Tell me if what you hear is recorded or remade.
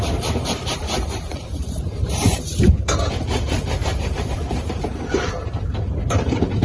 remade